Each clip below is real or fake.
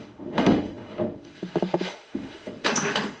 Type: fake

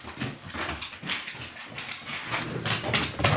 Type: real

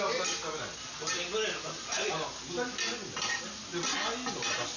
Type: real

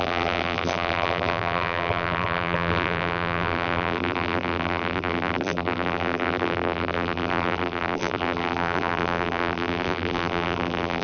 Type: fake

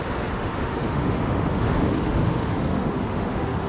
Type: fake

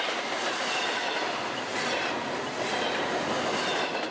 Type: real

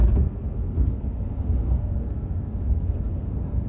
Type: fake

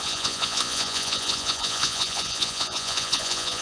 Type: fake